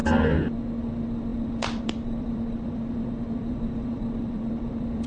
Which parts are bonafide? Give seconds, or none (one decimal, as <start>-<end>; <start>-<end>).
0.0-0.8